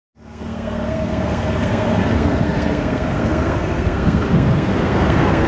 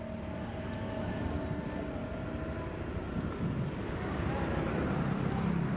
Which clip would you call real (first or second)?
second